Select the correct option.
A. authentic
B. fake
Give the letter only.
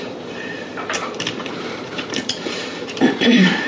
B